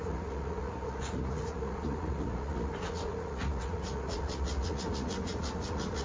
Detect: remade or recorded remade